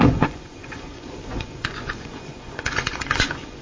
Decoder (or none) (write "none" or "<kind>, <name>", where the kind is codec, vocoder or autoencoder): vocoder, Vocos